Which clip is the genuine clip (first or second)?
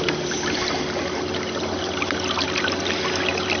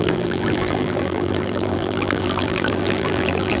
first